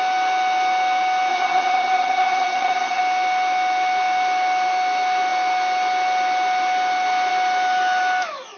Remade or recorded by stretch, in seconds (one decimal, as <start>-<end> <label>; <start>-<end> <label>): 0.0-1.3 recorded; 1.3-3.0 remade; 3.0-8.6 recorded